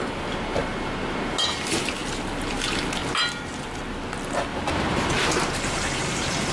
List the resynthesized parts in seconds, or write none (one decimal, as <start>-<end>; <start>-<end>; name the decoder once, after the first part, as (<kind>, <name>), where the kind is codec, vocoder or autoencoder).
2.0-2.6 (vocoder, BigVGAN v2); 3.0-4.0; 4.5-6.5